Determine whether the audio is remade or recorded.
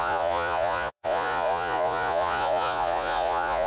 remade